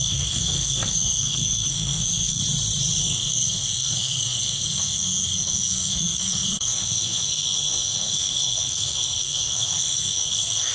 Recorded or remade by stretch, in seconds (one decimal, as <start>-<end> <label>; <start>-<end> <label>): 0.0-2.4 remade; 2.4-3.0 recorded; 3.0-10.7 remade